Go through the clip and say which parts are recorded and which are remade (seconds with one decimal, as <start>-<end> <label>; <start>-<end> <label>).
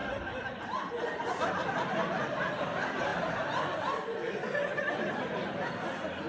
0.0-6.3 recorded